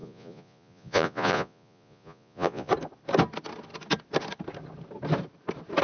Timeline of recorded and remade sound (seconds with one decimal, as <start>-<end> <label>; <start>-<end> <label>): 0.0-2.7 remade; 2.7-5.8 recorded